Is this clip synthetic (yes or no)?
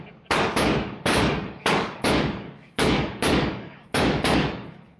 yes